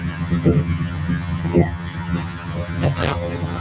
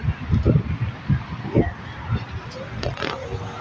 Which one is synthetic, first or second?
first